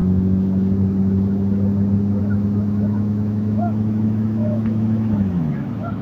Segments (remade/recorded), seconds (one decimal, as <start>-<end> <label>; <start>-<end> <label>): 0.0-2.2 recorded; 2.2-6.0 remade